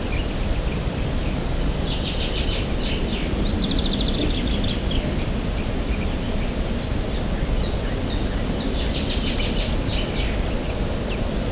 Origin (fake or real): real